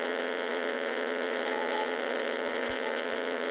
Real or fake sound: fake